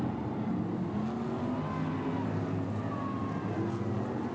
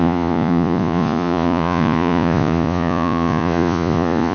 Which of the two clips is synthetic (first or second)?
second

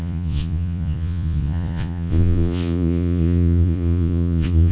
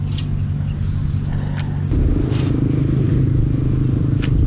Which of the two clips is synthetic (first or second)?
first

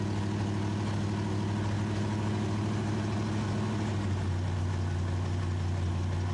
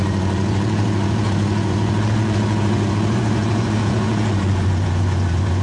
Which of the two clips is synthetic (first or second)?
second